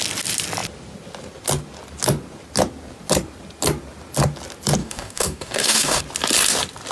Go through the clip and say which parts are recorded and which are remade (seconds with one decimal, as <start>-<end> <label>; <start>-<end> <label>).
0.0-4.8 recorded; 4.8-6.0 remade; 6.0-6.9 recorded